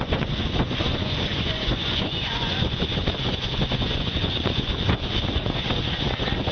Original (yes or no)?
no